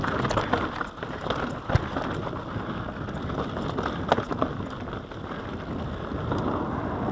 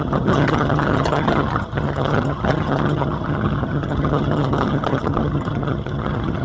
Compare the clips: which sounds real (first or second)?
first